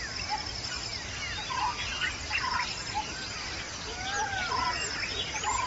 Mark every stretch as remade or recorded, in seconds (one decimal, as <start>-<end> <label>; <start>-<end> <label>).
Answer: 0.0-5.7 recorded